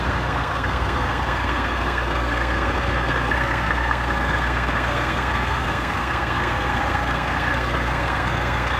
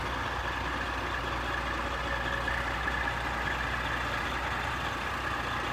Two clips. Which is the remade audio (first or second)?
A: first